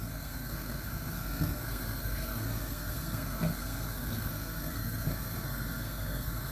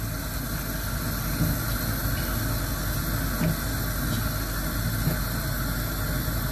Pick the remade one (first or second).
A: first